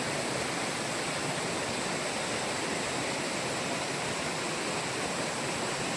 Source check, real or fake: real